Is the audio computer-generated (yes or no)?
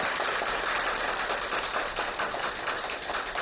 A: no